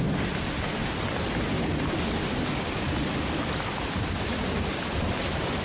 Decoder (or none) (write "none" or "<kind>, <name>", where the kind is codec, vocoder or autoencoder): vocoder, BigVGAN v2